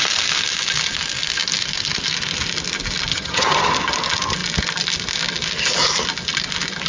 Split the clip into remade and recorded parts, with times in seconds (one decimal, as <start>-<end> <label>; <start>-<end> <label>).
0.0-3.1 recorded; 3.1-3.7 remade; 3.7-6.9 recorded